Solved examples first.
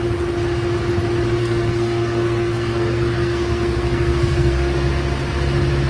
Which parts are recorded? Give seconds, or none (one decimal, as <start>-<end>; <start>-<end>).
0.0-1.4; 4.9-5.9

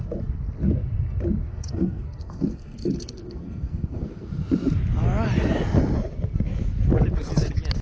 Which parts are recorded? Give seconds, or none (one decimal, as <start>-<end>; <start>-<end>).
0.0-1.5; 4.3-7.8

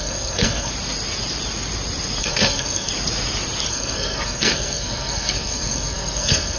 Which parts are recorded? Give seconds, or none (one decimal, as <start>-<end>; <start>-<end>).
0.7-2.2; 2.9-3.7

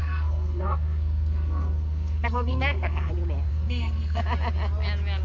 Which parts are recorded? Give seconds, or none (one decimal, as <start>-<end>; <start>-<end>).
3.1-3.5; 4.2-5.2

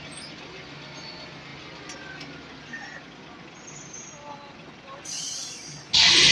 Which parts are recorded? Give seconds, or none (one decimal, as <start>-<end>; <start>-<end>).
0.0-6.3

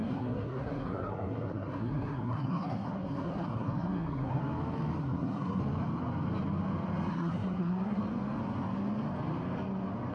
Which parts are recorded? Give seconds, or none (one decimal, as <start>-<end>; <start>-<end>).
4.4-5.0; 5.6-7.1; 8.0-10.1